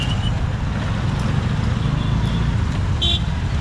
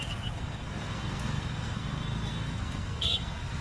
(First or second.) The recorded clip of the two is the first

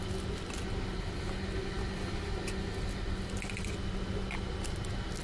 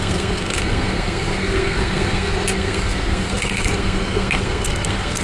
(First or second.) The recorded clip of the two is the first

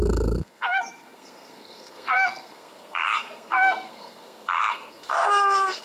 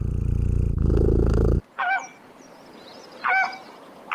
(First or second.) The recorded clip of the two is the second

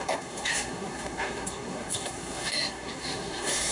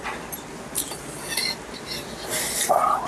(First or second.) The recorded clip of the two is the second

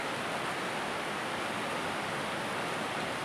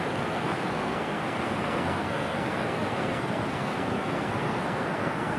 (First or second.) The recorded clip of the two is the first